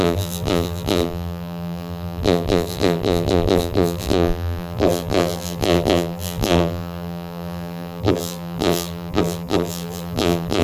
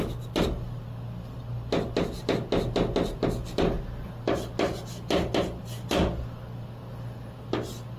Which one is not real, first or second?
first